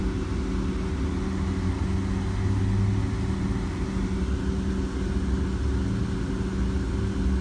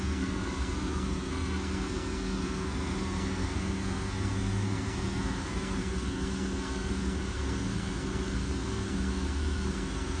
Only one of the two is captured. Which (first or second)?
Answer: first